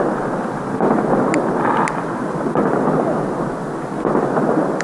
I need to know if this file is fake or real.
real